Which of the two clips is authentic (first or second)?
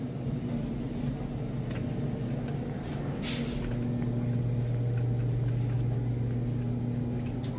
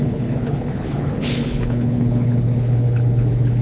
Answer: first